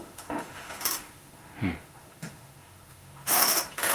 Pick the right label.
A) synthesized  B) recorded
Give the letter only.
A